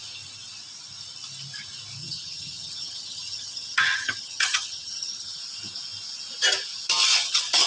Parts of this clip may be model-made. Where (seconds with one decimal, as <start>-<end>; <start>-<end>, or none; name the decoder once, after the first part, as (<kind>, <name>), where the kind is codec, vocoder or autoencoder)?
2.0-5.4 (vocoder, HiFi-GAN); 7.1-7.7